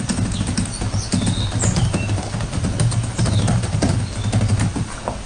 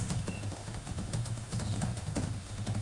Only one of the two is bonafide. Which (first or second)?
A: first